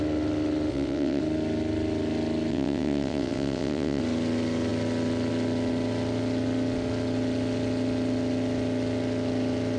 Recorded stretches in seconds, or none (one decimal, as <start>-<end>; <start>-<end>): 0.0-0.7; 1.2-2.5; 4.0-9.8